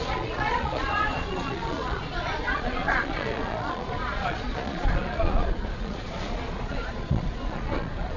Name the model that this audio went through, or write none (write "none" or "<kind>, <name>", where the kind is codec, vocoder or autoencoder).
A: vocoder, Vocos